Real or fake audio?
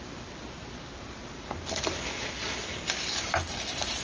real